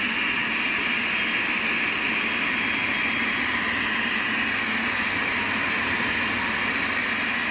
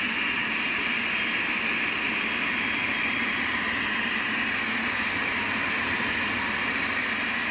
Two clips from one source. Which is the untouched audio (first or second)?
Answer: first